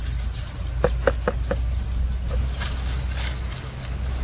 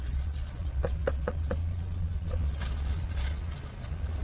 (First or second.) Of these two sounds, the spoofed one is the second